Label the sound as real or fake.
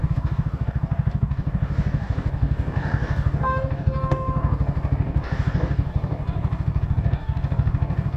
fake